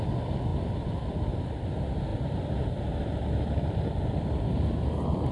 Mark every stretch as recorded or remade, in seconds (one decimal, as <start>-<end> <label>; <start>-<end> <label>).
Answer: 0.0-5.3 recorded